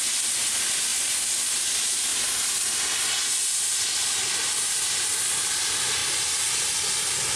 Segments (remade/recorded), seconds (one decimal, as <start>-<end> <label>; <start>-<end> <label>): 0.0-0.9 recorded; 0.9-1.7 remade; 1.7-7.4 recorded